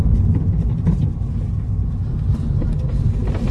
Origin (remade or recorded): recorded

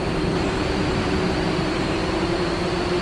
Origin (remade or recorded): remade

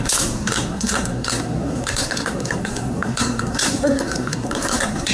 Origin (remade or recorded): remade